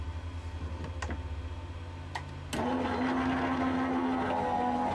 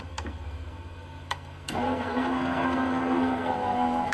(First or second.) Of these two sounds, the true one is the first